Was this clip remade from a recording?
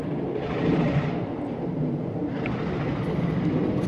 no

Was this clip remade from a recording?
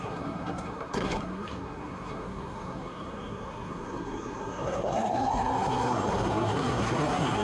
yes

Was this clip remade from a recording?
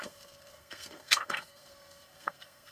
yes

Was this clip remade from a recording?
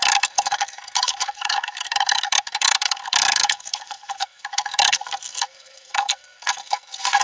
yes